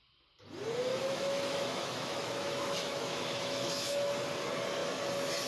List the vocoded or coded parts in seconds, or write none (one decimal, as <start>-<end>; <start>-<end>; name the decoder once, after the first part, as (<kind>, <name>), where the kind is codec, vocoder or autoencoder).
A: 0.9-4.2 (autoencoder, DAC-VAE)